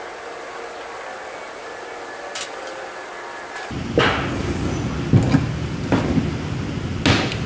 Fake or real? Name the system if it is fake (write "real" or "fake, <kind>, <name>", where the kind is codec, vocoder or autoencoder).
real